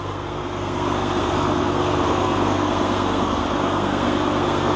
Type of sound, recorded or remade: remade